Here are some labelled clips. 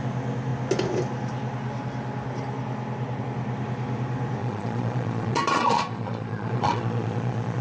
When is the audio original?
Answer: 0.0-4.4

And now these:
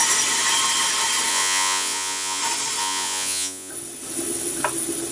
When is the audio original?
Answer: 0.0-1.3; 2.4-2.8; 3.7-5.1

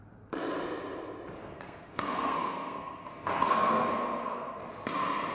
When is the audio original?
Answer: 0.0-1.4; 4.6-5.3

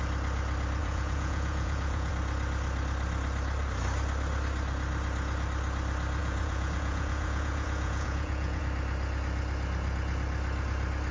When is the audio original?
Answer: 0.0-0.8; 2.1-6.2; 8.6-11.1

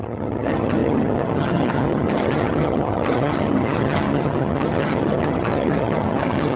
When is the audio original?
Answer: none

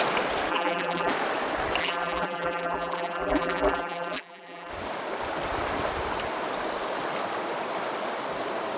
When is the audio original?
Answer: 0.0-0.5; 1.1-1.8; 4.7-8.8

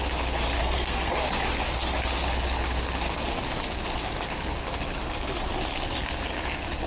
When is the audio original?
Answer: 0.0-0.6; 1.1-6.9

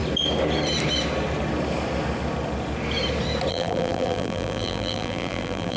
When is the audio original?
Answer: 0.0-3.5